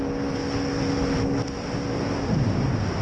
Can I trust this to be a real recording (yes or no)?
yes